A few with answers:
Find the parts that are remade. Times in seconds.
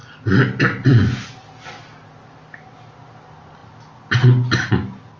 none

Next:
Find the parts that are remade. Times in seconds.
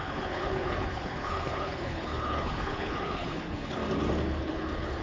0.0-3.8 (codec, HILCodec); 4.4-5.0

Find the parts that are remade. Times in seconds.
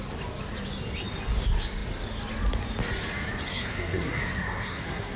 3.5-5.2 (codec, SNAC)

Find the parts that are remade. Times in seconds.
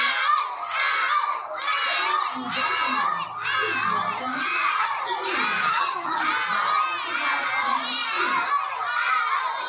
4.3-4.9 (vocoder, HiFi-GAN); 5.6-6.3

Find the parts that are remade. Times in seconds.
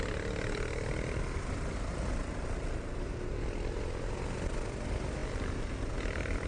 none